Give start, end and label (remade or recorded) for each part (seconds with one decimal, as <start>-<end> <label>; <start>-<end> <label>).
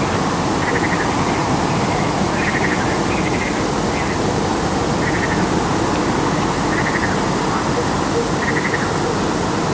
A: 0.0-1.4 recorded; 1.4-2.7 remade; 2.7-9.7 recorded